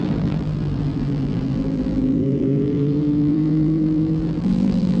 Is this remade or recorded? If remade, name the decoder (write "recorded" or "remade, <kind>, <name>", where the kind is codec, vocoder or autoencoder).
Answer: remade, vocoder, BigVGAN v2